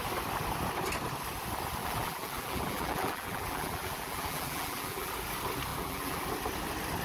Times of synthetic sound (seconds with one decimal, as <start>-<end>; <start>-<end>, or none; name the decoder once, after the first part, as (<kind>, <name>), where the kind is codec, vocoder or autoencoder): 1.8-5.1 (vocoder, BigVGAN v2); 5.7-6.2